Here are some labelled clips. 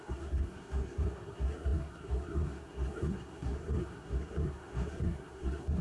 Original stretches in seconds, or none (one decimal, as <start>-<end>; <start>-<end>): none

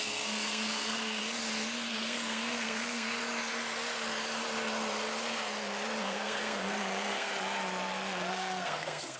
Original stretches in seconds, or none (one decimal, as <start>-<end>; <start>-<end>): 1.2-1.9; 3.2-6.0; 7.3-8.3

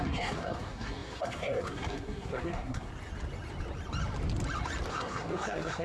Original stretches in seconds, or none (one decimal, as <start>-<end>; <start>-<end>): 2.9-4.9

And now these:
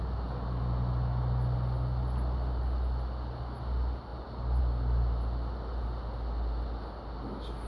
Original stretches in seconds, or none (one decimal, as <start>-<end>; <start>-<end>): 0.0-7.7

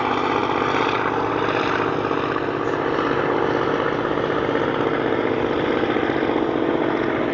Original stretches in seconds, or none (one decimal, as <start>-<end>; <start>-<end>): 0.0-7.3

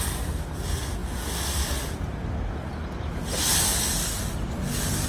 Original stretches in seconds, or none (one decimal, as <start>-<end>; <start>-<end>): 0.0-5.1